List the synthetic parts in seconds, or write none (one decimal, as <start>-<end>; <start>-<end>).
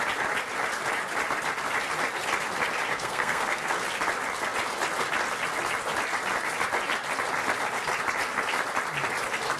2.9-3.7